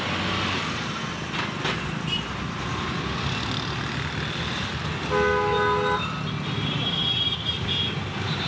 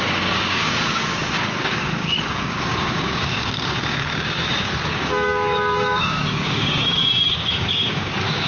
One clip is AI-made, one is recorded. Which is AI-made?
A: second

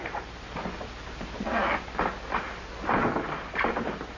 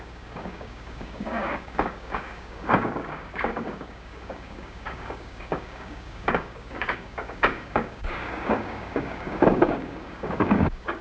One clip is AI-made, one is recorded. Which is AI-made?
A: second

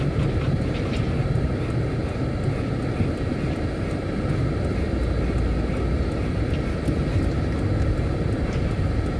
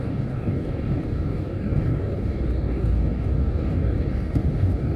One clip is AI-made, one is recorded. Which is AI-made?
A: second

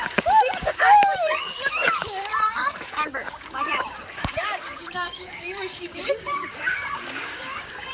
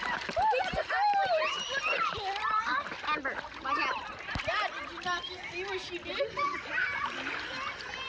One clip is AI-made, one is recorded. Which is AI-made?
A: first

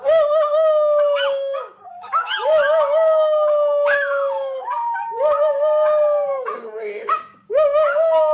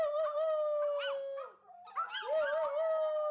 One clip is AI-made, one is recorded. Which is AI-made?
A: first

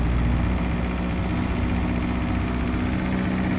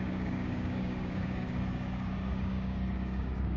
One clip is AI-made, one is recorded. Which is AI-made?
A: second